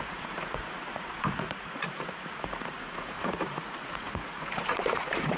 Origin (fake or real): fake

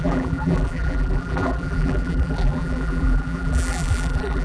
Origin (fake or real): fake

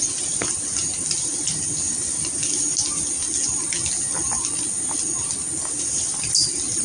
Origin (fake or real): real